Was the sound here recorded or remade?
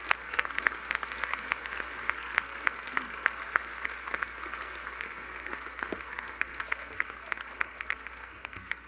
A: remade